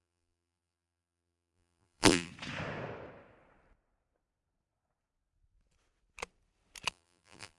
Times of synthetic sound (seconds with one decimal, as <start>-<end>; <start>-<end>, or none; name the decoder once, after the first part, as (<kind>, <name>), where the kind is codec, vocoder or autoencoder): 0.0-2.3 (vocoder, BigVGAN v2); 6.9-7.6